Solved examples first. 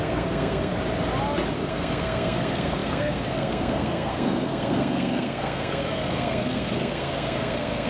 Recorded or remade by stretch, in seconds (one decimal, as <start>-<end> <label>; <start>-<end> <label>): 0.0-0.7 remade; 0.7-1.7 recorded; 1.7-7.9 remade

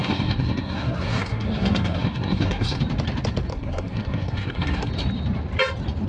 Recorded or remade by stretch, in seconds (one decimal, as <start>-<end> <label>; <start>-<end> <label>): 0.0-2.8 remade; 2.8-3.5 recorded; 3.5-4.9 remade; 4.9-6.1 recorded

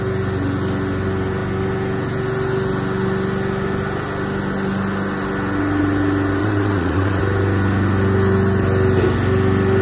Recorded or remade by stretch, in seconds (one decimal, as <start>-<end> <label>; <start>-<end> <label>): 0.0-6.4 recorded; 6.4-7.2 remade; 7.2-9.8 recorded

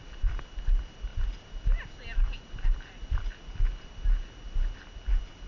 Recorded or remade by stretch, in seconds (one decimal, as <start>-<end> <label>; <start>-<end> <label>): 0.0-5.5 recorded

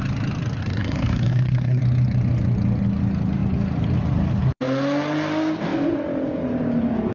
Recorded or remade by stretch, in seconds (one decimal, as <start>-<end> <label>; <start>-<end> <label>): 0.0-0.6 recorded; 0.6-1.8 remade; 1.8-7.1 recorded